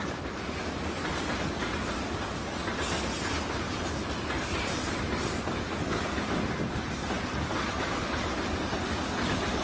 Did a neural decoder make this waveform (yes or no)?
no